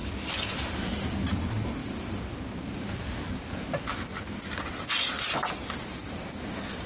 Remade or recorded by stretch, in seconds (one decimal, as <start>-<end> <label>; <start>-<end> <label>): 0.0-0.5 remade; 0.5-1.8 recorded; 1.8-4.6 remade; 4.6-6.9 recorded